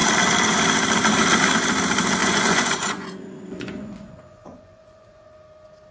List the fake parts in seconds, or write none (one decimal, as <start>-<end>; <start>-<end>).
2.2-5.3